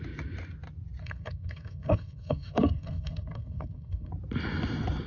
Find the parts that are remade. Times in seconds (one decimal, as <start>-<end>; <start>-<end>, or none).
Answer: 1.0-4.1